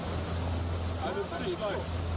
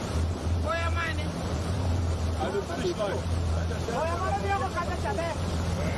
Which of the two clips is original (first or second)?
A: first